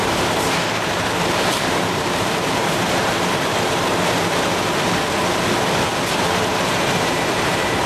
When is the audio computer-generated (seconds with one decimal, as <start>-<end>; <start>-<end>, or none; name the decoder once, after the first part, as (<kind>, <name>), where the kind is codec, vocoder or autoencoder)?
0.0-3.5 (vocoder, BigVGAN v2); 6.5-7.9